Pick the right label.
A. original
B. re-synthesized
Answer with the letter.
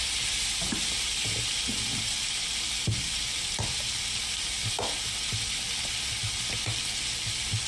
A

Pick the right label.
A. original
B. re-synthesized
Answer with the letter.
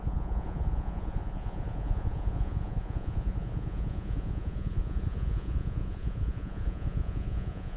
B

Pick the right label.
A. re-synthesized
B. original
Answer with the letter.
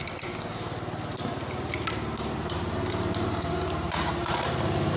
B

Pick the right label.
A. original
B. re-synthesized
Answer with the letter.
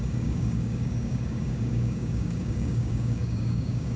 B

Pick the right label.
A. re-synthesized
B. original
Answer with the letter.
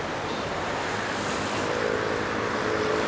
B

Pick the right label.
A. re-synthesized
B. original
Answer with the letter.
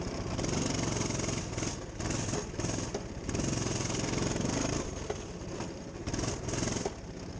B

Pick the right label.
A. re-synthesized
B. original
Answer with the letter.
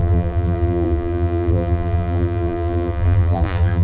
A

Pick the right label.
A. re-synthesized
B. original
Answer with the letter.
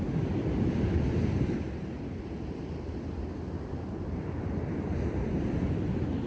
B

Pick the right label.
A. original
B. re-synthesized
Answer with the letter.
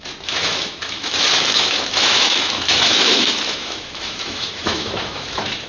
B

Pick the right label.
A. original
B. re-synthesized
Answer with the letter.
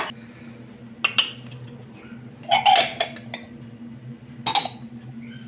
A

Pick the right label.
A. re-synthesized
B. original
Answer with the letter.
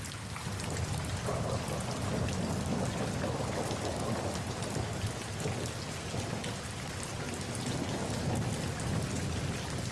B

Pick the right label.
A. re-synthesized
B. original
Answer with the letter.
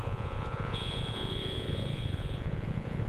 A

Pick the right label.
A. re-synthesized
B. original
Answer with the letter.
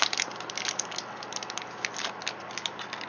B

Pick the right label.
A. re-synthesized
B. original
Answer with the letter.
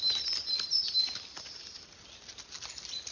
B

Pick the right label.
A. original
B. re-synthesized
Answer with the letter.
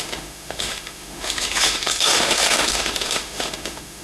B